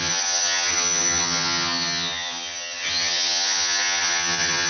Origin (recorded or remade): remade